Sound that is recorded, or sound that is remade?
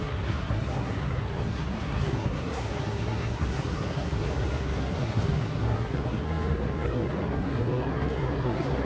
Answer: remade